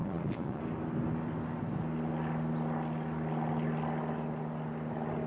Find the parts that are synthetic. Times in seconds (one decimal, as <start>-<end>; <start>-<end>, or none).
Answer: 0.0-0.6